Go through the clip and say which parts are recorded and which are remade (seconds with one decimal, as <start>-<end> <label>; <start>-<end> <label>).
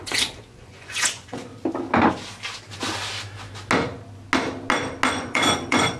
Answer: 0.0-1.5 remade; 1.5-5.1 recorded; 5.1-6.0 remade